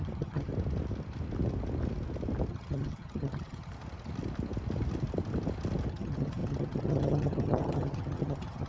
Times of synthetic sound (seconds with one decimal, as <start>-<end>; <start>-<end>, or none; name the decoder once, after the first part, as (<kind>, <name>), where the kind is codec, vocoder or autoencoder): 0.0-0.5 (vocoder, HiFi-GAN); 2.5-3.7; 5.9-8.7